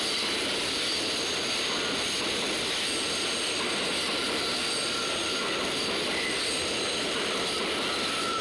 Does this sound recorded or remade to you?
recorded